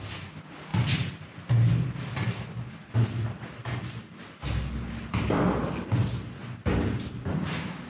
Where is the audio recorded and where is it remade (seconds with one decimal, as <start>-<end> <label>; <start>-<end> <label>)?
0.0-7.9 recorded